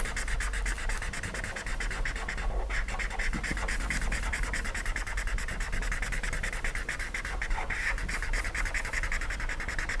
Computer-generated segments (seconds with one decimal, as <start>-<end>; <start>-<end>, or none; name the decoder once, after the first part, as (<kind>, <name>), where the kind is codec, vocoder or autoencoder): 3.5-8.4 (vocoder, BigVGAN v2)